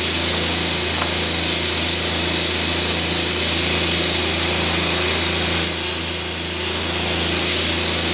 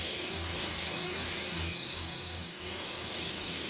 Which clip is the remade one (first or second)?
second